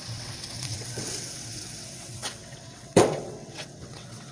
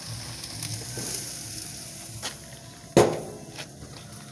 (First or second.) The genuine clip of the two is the second